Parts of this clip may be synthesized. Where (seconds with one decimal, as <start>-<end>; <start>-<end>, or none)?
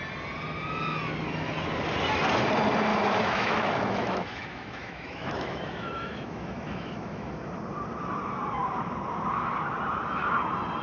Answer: 2.9-7.5